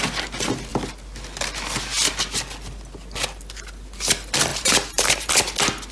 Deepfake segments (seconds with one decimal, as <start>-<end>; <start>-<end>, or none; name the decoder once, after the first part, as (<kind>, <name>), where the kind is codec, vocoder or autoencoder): 4.5-5.3 (vocoder, BigVGAN v2)